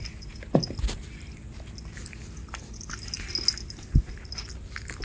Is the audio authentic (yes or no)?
yes